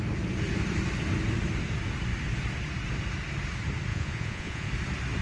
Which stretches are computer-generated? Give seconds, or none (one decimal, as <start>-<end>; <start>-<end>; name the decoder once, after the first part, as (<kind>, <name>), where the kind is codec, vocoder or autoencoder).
3.9-4.7 (vocoder, Vocos)